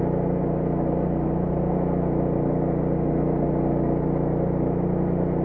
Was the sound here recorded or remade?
recorded